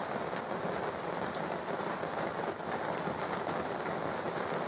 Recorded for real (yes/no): yes